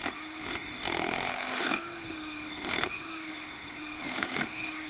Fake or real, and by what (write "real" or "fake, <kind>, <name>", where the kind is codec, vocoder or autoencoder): fake, autoencoder, DAC-VAE